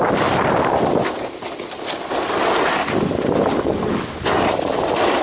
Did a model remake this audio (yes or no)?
no